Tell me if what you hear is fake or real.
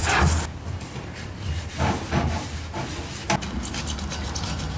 real